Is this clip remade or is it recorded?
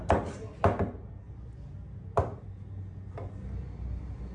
recorded